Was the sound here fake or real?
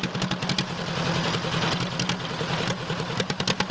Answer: real